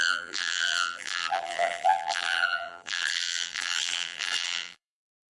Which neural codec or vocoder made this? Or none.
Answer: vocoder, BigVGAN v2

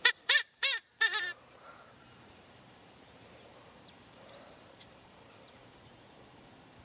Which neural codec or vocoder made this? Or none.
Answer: vocoder, BigVGAN v2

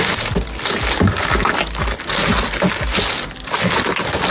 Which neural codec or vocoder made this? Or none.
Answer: none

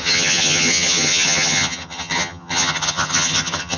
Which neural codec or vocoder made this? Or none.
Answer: vocoder, HiFi-GAN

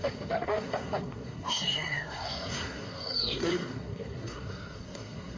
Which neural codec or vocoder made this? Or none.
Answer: codec, SNAC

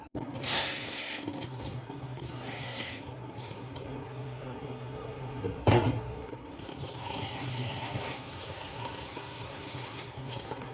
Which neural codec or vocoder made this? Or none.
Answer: codec, SNAC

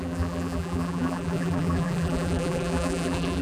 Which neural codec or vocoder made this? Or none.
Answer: vocoder, BigVGAN v2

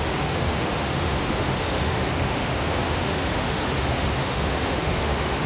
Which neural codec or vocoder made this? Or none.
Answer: autoencoder, DAC-VAE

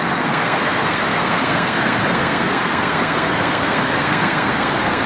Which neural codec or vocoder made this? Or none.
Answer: codec, SNAC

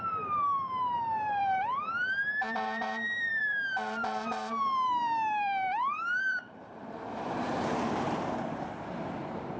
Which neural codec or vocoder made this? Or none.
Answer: vocoder, BigVGAN v2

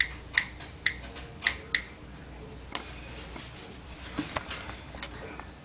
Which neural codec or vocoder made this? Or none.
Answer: none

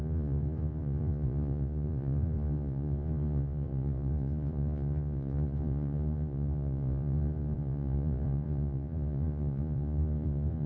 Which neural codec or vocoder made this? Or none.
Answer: vocoder, Vocos